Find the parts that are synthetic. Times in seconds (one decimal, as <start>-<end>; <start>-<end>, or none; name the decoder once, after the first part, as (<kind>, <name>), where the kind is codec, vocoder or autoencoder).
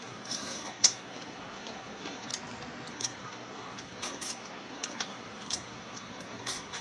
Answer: 0.0-2.3 (codec, SNAC); 2.9-6.8